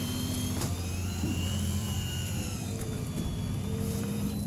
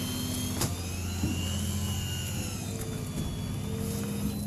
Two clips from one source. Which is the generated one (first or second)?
first